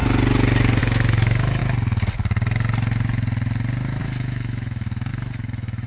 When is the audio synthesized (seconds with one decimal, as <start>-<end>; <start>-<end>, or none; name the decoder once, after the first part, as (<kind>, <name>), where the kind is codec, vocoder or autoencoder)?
0.8-1.6 (autoencoder, DAC-VAE); 4.0-5.9